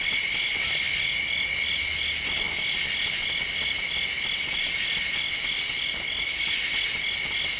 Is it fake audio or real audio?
real